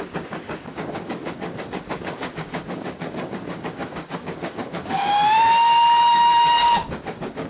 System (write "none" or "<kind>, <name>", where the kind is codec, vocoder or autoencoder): codec, DAC